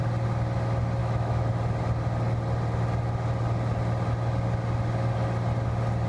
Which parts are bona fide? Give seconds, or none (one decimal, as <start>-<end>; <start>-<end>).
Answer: 0.0-1.0; 1.5-6.1